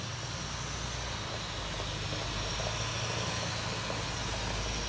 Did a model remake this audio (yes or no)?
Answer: no